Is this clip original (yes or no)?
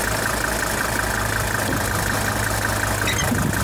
yes